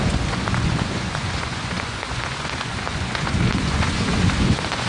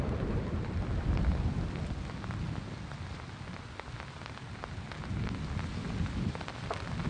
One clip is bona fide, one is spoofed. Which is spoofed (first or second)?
first